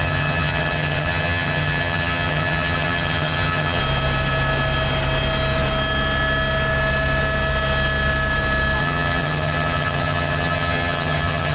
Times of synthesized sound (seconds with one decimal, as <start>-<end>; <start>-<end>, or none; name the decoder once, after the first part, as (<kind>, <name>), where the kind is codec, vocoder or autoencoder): 0.0-3.8 (vocoder, HiFi-GAN); 8.8-11.5